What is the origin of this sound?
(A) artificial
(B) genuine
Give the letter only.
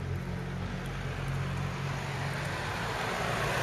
B